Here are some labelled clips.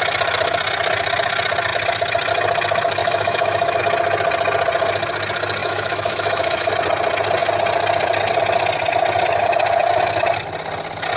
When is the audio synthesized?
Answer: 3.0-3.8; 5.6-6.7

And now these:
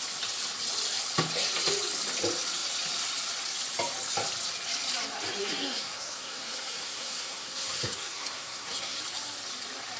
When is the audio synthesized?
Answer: 5.4-9.0

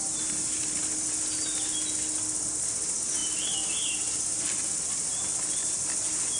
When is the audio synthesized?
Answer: none

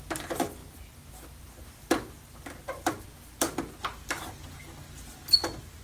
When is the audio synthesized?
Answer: none